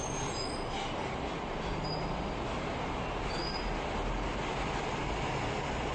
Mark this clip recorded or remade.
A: recorded